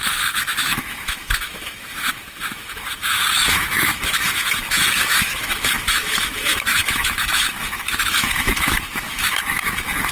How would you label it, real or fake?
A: fake